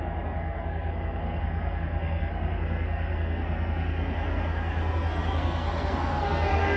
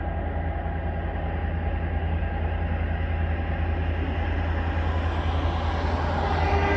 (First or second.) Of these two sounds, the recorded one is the second